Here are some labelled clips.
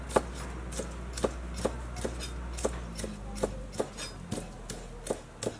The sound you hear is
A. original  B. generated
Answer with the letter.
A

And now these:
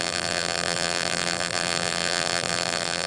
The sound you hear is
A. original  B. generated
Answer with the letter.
B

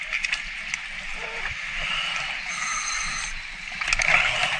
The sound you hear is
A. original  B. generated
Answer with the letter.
A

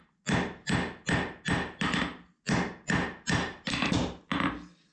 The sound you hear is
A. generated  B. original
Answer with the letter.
B